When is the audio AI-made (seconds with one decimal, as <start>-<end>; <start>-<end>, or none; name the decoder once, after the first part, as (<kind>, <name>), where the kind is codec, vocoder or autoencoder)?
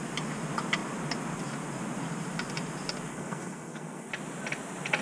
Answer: 3.1-4.1 (codec, SNAC)